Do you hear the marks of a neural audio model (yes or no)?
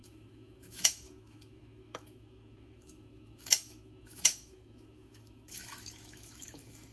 yes